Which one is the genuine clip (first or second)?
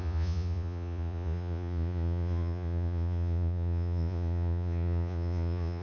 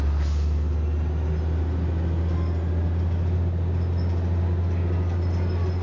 second